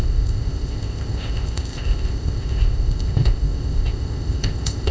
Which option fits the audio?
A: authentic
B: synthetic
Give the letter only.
B